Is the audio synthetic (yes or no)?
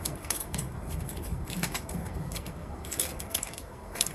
yes